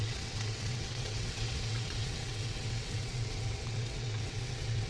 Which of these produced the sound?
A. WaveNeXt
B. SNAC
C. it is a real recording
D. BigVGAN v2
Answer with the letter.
A